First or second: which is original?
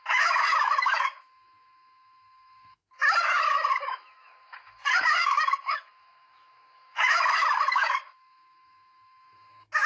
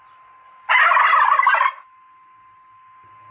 second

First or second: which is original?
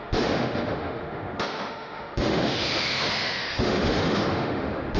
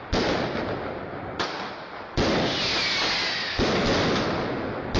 second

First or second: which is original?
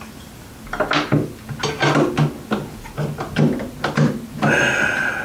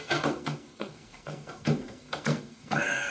first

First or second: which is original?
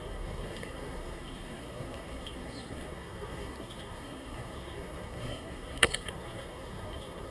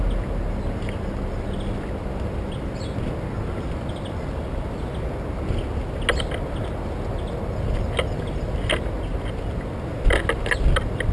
second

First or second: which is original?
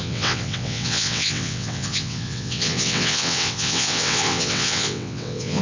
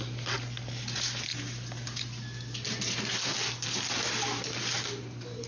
second